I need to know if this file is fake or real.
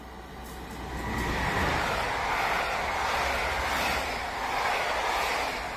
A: real